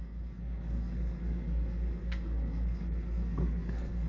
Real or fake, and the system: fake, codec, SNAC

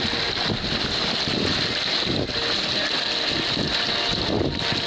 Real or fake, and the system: real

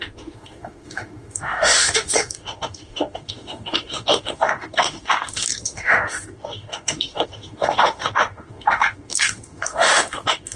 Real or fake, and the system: fake, autoencoder, DAC-VAE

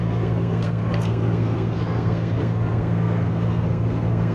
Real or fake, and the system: fake, codec, SNAC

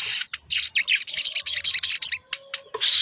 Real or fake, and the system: real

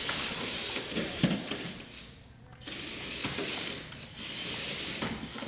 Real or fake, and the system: real